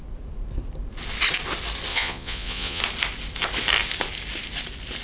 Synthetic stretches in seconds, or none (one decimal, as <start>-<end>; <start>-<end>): 1.9-2.8